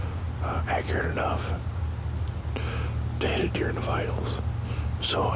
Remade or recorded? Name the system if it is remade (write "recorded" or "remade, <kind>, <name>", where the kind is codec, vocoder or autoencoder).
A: recorded